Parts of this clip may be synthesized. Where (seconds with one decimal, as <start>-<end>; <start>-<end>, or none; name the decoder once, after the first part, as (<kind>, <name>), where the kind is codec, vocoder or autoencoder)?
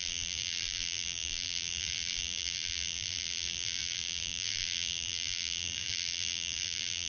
0.0-7.1 (vocoder, BigVGAN v2)